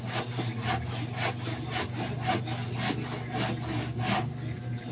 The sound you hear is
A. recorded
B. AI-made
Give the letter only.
A